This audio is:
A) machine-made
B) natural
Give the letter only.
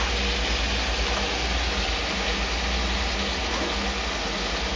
B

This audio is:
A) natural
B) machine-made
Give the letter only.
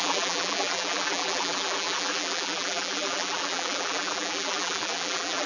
B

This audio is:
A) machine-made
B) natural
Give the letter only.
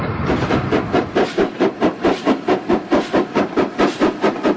A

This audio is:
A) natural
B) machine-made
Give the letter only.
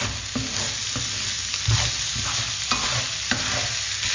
A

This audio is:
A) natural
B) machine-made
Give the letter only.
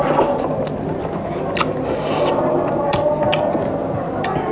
A